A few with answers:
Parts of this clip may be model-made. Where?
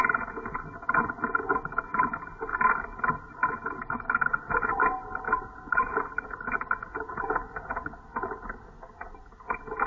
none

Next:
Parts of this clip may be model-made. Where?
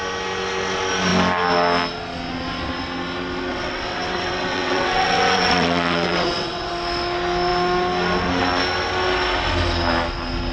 3.5-6.7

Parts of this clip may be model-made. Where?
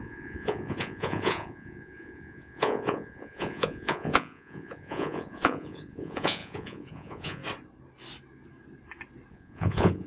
0.0-7.4; 9.3-10.1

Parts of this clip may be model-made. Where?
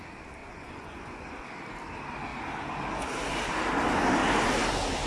0.4-1.4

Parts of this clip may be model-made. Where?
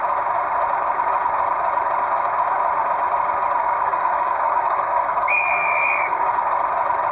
3.6-6.3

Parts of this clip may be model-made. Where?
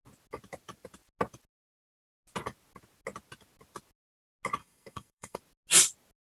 4.6-5.4